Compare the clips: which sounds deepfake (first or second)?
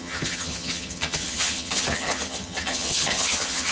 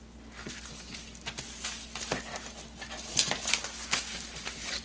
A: first